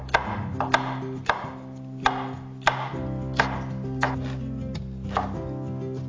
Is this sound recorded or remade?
recorded